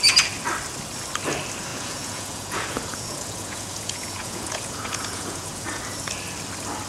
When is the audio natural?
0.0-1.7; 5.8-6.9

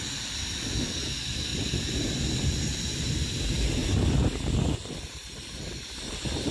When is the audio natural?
0.0-1.5; 2.2-3.8; 4.5-6.5

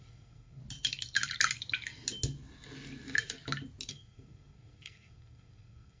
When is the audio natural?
0.6-3.9